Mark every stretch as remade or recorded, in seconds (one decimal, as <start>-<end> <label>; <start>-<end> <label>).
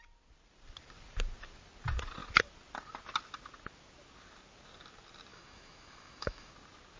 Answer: 0.0-5.3 recorded; 5.3-6.5 remade; 6.5-7.0 recorded